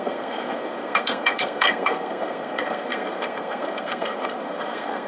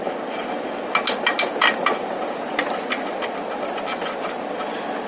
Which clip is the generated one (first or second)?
first